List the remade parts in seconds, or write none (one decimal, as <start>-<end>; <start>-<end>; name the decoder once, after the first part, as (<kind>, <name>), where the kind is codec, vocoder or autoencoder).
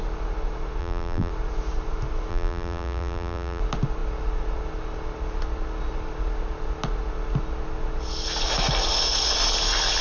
0.8-1.3 (vocoder, BigVGAN v2); 2.3-3.6